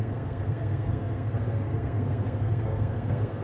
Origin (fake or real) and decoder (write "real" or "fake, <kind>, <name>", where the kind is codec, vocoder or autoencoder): fake, codec, SNAC